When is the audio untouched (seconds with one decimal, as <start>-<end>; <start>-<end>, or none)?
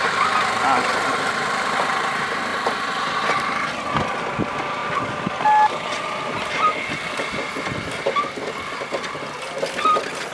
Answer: 0.0-2.5; 3.0-10.3